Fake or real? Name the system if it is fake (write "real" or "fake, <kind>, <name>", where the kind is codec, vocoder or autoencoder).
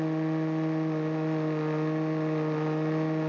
real